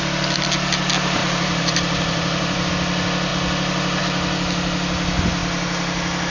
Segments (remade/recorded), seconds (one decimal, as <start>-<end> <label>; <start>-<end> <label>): 0.0-1.2 recorded; 1.2-2.7 remade; 2.7-6.3 recorded